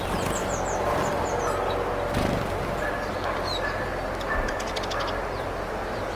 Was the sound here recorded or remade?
recorded